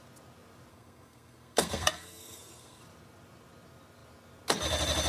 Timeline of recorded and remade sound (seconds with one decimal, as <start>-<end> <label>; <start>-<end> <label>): 0.0-0.7 recorded; 0.7-2.8 remade; 2.8-5.1 recorded